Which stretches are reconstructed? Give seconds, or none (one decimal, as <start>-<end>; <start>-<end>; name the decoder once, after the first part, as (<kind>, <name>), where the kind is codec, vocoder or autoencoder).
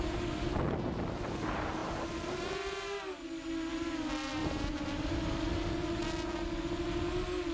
1.8-3.2 (vocoder, BigVGAN v2); 4.4-5.1